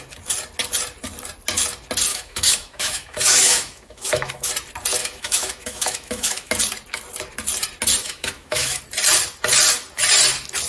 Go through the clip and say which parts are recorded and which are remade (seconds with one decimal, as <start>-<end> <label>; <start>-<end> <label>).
0.0-2.1 recorded; 2.1-4.5 remade; 4.5-5.0 recorded; 5.0-6.5 remade; 6.5-8.0 recorded; 8.0-8.8 remade; 8.8-10.7 recorded